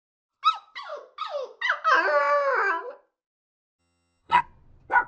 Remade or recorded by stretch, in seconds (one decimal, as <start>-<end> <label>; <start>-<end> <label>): 0.0-3.8 recorded; 3.8-4.4 remade; 4.4-5.1 recorded